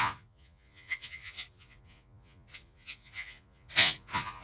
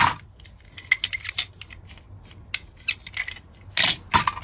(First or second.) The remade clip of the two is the first